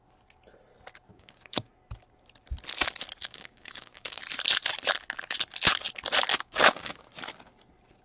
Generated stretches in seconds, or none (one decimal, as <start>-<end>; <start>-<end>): 1.1-1.7; 3.2-4.2; 6.3-7.0